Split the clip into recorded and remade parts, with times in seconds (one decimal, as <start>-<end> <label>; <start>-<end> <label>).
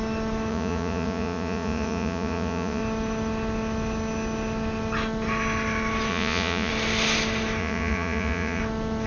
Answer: 0.0-0.5 recorded; 0.5-2.8 remade; 2.8-6.1 recorded; 6.1-6.7 remade; 6.7-7.6 recorded; 7.6-8.6 remade; 8.6-9.1 recorded